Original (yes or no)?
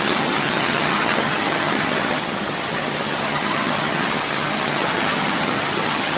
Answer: no